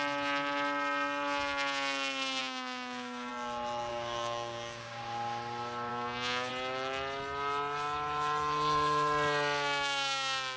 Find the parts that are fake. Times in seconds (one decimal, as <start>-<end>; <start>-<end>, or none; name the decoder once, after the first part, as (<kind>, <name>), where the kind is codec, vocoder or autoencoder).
2.4-3.3 (codec, DAC); 3.9-5.0; 5.9-6.5

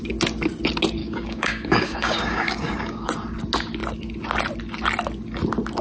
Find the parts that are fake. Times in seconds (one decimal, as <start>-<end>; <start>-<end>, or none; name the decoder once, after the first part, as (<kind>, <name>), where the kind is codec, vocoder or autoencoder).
1.0-3.1 (codec, DAC)